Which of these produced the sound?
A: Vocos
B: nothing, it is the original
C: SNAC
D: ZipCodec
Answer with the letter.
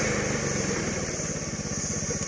B